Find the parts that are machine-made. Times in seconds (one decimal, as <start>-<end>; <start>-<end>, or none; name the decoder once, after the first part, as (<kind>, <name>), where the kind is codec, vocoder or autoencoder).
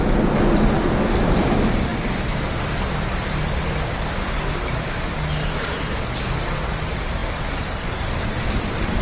none